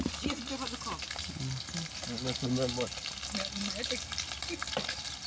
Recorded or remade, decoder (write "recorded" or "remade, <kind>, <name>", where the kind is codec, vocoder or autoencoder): recorded